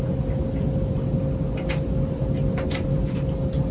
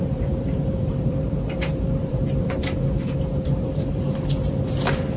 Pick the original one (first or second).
first